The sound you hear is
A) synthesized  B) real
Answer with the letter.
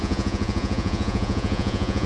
A